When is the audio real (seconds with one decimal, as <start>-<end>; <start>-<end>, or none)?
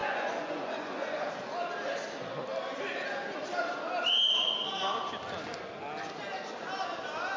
1.3-7.4